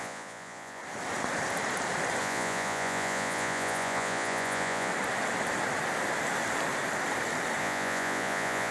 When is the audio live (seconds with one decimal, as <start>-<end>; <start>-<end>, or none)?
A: 0.8-2.2; 4.9-7.6